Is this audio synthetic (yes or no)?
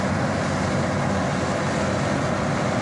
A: no